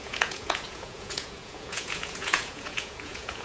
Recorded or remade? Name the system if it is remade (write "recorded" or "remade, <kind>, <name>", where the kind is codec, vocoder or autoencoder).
remade, vocoder, Vocos